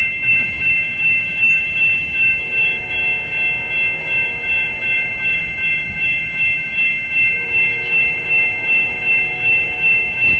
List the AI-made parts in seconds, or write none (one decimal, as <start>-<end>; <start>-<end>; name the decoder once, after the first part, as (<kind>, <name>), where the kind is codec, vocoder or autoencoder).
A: 0.0-3.0 (autoencoder, DAC-VAE); 4.0-10.4